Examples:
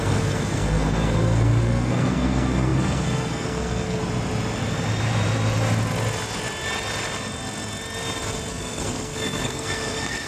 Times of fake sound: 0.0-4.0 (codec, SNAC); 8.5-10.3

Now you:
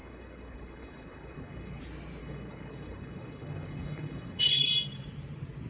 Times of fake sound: 0.0-1.8 (codec, HILCodec); 2.2-4.7

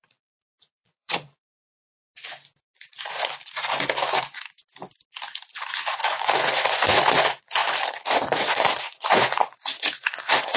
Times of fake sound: 0.0-1.6 (vocoder, Vocos); 6.1-7.6; 8.2-10.6

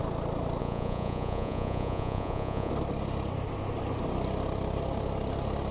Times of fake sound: 0.6-2.7 (vocoder, Vocos)

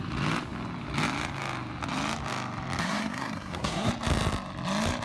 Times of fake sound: 2.8-3.9 (codec, SNAC)

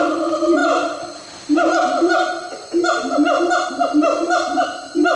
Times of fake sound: none

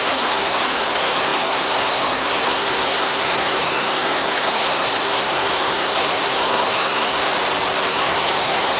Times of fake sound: 0.0-7.3 (codec, SNAC); 7.9-8.8

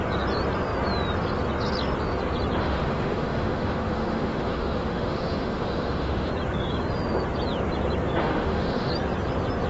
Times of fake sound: 2.6-6.3 (autoencoder, DAC-VAE); 8.2-8.9